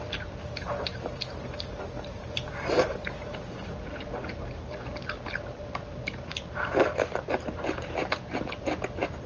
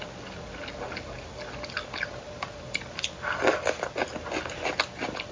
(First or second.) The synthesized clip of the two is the first